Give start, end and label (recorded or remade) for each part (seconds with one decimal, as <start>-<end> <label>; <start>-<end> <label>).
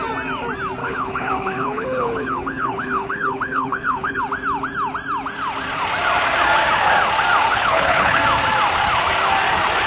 0.0-0.8 recorded; 0.8-4.2 remade; 4.2-7.5 recorded; 7.5-8.2 remade; 8.2-9.9 recorded